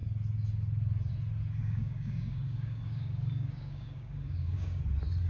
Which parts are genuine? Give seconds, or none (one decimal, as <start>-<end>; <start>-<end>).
0.0-1.6; 4.8-5.3